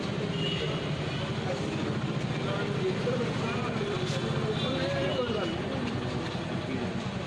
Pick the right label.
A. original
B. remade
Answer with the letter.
A